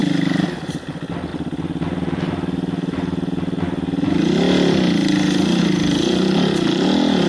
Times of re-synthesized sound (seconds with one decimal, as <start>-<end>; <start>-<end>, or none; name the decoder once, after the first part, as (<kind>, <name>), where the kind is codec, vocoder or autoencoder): none